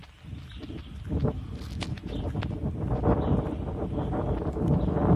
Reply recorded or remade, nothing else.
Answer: recorded